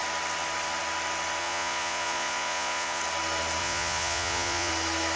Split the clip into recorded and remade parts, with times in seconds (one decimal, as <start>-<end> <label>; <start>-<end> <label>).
0.0-1.4 recorded; 1.4-3.0 remade; 3.0-3.6 recorded; 3.6-4.7 remade; 4.7-5.2 recorded